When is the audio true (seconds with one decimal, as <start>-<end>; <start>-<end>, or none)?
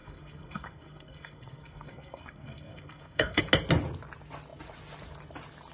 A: 3.4-5.7